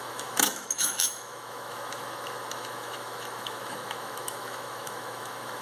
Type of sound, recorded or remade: remade